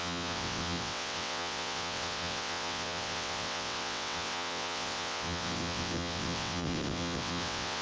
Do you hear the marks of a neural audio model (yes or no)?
yes